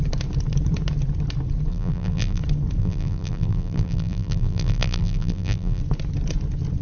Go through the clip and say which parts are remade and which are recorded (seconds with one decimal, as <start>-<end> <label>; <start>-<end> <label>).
0.0-1.7 recorded; 1.7-2.4 remade; 2.4-2.8 recorded; 2.8-5.8 remade; 5.8-6.8 recorded